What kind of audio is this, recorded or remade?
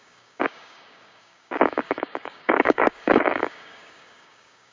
remade